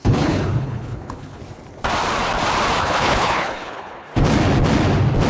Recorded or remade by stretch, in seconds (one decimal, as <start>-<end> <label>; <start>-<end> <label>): 0.0-1.4 remade; 1.4-2.8 recorded; 2.8-4.1 remade; 4.1-5.3 recorded